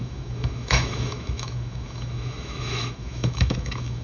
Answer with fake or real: fake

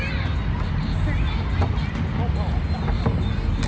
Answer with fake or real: real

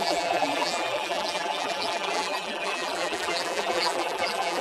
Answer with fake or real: fake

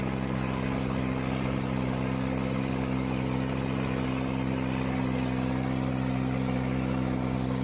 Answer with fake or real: real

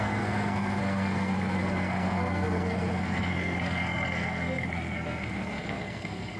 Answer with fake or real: fake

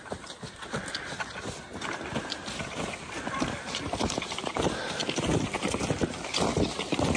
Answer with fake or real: fake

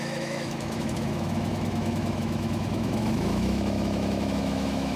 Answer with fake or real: fake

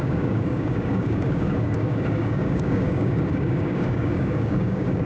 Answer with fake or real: fake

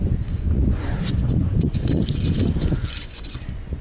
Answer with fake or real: fake